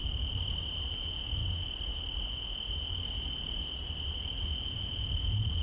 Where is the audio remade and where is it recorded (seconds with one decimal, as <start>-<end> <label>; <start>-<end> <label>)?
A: 0.0-5.6 recorded